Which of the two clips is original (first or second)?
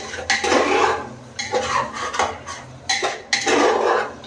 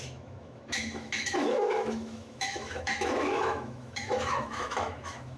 first